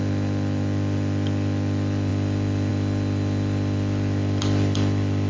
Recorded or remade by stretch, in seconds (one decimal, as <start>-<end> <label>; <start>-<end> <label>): 0.0-5.3 recorded